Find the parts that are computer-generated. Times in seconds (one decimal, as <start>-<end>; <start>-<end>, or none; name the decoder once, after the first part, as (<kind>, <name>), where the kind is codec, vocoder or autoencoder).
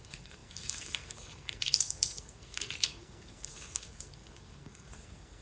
0.0-5.4 (codec, SNAC)